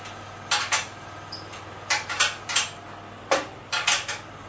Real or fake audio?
real